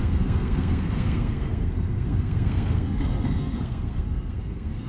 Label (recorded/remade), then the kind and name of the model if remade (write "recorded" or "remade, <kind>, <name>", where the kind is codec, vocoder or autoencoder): remade, codec, SNAC